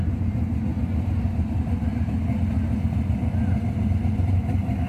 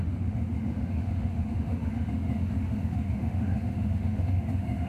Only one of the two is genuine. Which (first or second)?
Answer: first